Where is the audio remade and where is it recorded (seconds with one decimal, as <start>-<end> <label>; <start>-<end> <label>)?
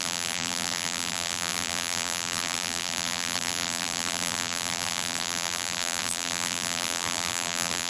0.0-7.9 remade